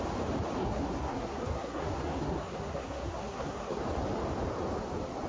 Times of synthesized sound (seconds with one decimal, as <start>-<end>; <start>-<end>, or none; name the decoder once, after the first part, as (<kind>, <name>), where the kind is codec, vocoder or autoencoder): 0.6-3.8 (codec, SNAC)